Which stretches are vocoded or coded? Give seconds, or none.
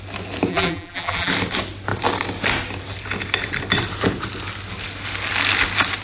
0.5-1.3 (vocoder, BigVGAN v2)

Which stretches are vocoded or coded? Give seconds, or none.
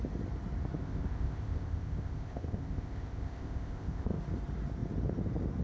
0.8-4.2 (codec, ZipCodec)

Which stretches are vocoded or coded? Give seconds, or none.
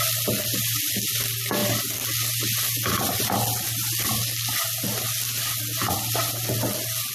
none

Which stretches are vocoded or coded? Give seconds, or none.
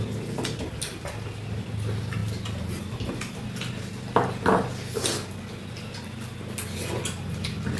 none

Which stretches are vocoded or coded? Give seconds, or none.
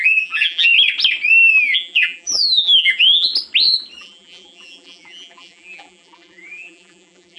0.0-0.7 (vocoder, BigVGAN v2); 1.5-3.3; 4.0-7.4